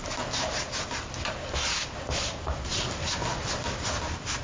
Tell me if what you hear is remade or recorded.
recorded